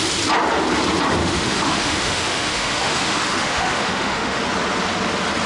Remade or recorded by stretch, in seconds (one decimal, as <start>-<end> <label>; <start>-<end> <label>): 0.0-1.2 recorded; 1.2-4.4 remade; 4.4-5.5 recorded